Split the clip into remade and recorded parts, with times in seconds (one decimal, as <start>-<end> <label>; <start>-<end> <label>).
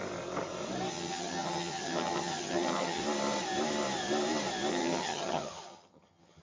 0.0-0.9 recorded; 0.9-3.0 remade; 3.0-4.7 recorded; 4.7-6.4 remade